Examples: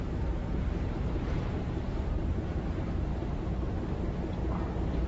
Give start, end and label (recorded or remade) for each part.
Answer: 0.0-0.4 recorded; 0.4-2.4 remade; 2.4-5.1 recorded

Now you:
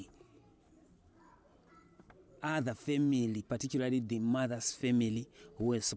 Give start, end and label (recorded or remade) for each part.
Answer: 0.0-4.8 remade; 4.8-6.0 recorded